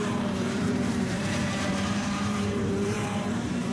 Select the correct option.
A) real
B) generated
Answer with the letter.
B